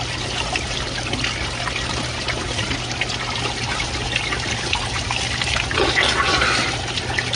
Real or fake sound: real